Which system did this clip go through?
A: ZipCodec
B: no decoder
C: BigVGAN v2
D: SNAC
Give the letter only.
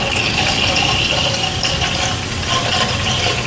B